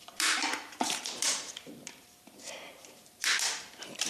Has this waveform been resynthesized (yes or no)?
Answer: yes